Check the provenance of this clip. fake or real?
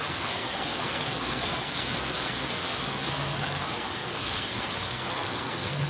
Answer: fake